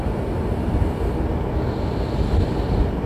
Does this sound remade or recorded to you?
recorded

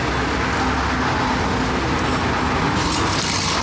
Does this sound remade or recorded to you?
recorded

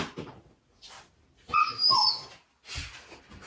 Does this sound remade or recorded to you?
recorded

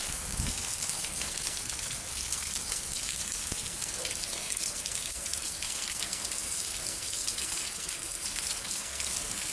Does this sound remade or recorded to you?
remade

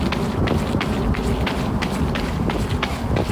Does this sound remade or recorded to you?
recorded